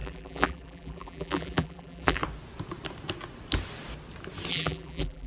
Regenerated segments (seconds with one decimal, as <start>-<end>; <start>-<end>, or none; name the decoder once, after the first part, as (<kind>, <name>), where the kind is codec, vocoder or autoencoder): 0.0-2.2 (vocoder, BigVGAN v2); 4.5-5.3